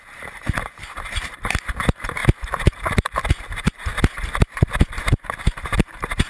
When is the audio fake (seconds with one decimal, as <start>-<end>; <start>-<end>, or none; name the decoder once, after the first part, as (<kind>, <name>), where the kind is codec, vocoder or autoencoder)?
0.0-2.2 (vocoder, BigVGAN v2); 2.7-3.9; 5.0-6.3